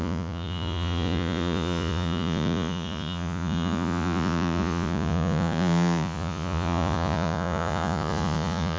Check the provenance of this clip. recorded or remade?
remade